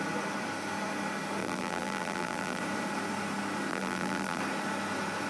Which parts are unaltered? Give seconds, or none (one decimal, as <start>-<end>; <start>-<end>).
0.0-1.4; 2.6-3.7; 4.4-5.3